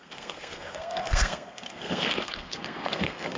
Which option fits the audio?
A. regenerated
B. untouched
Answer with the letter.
A